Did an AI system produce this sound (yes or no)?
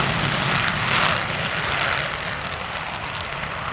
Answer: yes